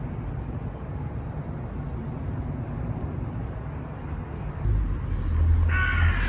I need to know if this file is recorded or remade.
recorded